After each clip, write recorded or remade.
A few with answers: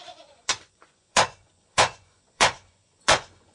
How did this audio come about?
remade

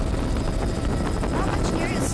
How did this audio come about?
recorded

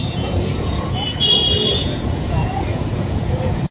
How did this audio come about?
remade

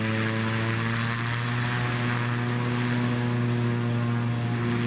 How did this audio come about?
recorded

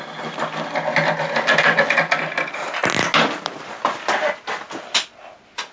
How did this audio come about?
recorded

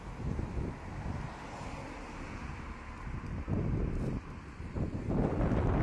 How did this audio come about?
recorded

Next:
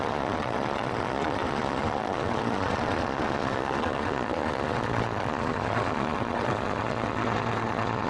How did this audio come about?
remade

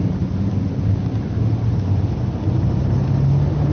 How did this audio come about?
recorded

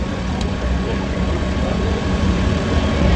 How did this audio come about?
remade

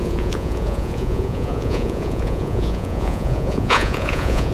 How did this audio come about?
remade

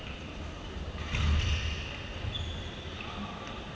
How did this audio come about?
recorded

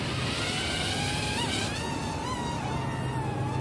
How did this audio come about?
recorded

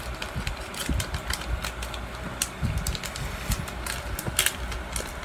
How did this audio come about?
recorded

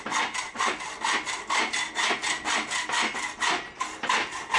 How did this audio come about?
recorded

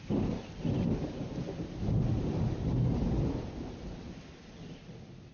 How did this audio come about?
recorded